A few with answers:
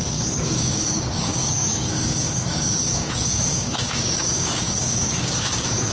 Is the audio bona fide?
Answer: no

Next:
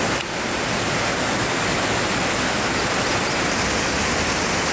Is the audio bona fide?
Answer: yes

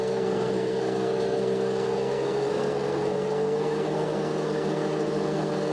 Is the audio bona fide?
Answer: no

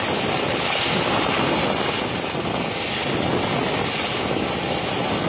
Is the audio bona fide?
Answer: yes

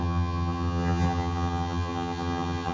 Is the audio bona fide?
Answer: no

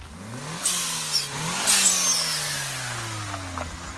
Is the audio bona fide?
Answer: yes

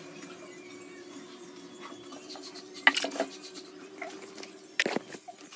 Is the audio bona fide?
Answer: yes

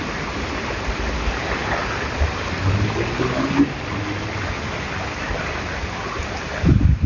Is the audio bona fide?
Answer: yes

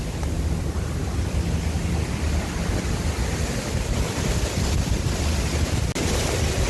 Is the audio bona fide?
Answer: yes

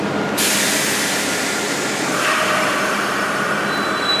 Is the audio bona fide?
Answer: yes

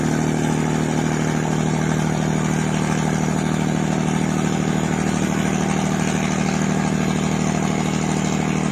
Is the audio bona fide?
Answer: yes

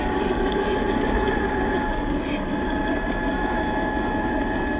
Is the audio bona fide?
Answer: yes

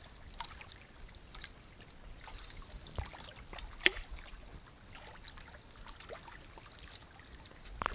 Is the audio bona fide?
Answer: yes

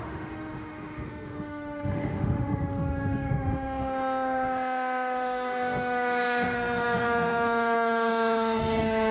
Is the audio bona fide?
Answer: no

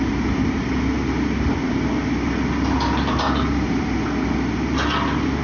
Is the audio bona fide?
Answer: yes